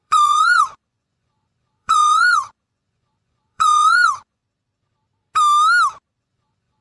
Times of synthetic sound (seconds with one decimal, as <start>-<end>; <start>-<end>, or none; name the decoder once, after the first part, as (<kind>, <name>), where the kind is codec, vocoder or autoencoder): 0.0-4.4 (vocoder, Vocos); 6.2-6.8